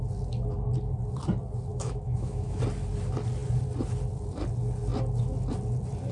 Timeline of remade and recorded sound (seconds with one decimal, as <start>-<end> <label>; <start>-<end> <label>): 0.0-1.7 recorded; 1.7-2.6 remade; 2.6-6.1 recorded